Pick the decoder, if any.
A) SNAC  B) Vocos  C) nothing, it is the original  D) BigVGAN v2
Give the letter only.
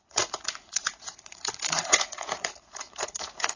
B